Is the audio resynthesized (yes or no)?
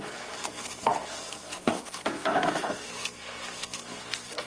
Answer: yes